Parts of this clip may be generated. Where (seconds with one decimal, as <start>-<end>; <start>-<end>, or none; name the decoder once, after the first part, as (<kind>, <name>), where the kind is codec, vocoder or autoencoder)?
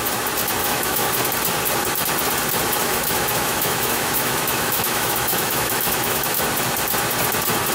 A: 0.6-1.1 (autoencoder, DAC-VAE); 2.8-6.4